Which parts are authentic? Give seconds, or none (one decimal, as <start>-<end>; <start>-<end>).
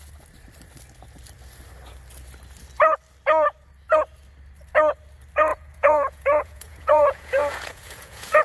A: 0.0-5.5